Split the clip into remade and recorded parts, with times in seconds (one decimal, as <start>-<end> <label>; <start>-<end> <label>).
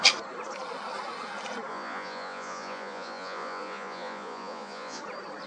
0.0-1.7 recorded; 1.7-5.0 remade; 5.0-5.5 recorded